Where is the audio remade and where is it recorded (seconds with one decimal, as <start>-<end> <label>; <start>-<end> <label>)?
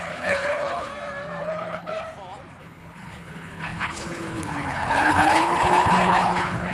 0.0-0.9 remade; 0.9-1.4 recorded; 1.4-1.9 remade; 1.9-2.6 recorded; 2.6-6.7 remade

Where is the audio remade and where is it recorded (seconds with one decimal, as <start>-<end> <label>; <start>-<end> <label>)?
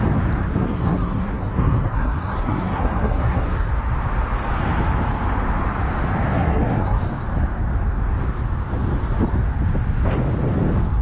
0.0-0.5 recorded; 0.5-3.7 remade; 3.7-6.3 recorded; 6.3-7.0 remade; 7.0-11.0 recorded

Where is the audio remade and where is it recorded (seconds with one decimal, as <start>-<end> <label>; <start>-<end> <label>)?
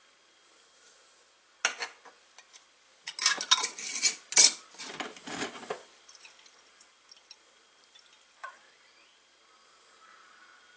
0.0-10.8 recorded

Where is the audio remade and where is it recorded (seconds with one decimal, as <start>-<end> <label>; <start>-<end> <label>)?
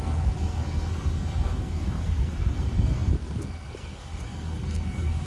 0.0-5.3 remade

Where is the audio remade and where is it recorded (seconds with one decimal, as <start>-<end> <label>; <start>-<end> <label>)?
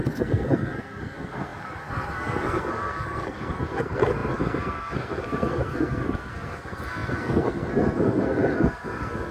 0.0-9.3 remade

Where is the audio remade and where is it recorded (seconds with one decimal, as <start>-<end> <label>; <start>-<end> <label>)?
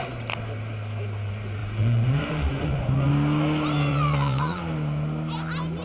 0.0-1.6 recorded; 1.6-3.1 remade; 3.1-3.9 recorded; 3.9-4.6 remade; 4.6-5.8 recorded